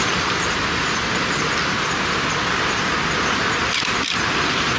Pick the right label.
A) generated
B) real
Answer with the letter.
B